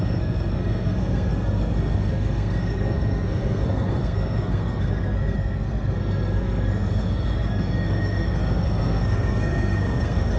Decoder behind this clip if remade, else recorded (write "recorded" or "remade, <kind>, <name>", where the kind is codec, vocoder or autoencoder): remade, codec, SNAC